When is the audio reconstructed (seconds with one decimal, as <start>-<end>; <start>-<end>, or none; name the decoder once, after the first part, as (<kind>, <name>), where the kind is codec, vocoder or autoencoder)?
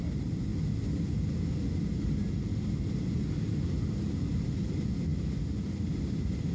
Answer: none